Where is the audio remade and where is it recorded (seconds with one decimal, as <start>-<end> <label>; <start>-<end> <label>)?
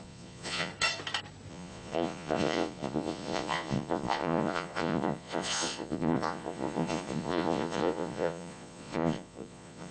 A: 0.0-0.7 remade; 0.7-1.5 recorded; 1.5-9.9 remade